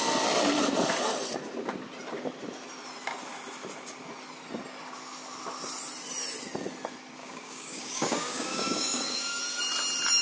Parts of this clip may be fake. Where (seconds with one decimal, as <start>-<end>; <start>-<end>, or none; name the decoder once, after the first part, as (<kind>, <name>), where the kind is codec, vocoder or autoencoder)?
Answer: 7.2-9.4 (codec, DAC)